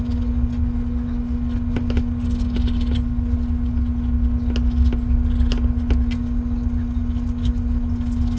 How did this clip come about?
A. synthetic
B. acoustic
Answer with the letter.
B